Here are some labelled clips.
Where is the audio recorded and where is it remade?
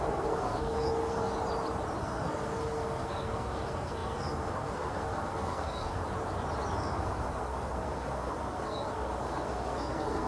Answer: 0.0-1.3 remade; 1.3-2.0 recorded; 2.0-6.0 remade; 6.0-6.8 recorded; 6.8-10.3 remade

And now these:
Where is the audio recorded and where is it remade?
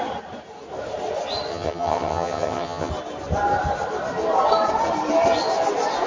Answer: 0.0-1.5 recorded; 1.5-2.9 remade; 2.9-6.1 recorded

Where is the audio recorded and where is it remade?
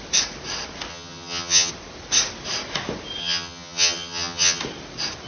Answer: 0.0-0.9 recorded; 0.9-1.7 remade; 1.7-3.2 recorded; 3.2-4.6 remade; 4.6-5.3 recorded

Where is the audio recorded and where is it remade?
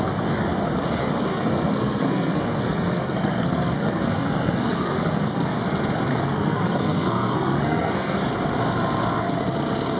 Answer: 0.0-1.3 recorded; 1.3-5.6 remade; 5.6-6.1 recorded; 6.1-8.2 remade; 8.2-10.0 recorded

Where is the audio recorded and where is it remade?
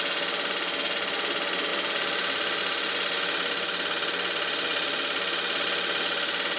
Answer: 0.0-1.7 recorded; 1.7-2.6 remade; 2.6-6.6 recorded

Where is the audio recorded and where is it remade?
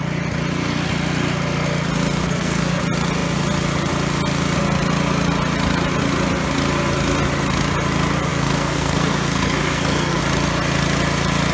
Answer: 0.0-2.2 recorded; 2.2-2.8 remade; 2.8-8.3 recorded; 8.3-10.2 remade; 10.2-11.5 recorded